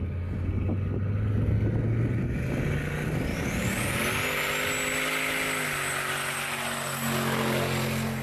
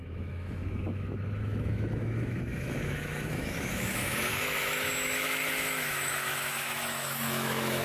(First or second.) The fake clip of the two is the second